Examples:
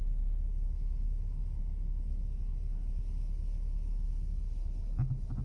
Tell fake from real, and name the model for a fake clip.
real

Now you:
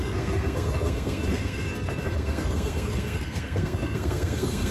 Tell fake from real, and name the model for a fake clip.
fake, codec, SNAC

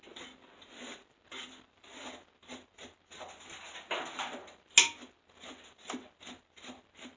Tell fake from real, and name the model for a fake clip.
real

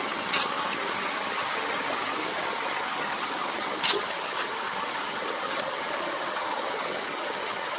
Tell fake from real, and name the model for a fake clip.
fake, vocoder, HiFi-GAN